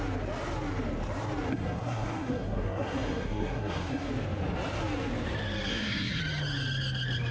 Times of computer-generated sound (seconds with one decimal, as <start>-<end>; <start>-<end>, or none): 1.5-4.1; 5.7-6.2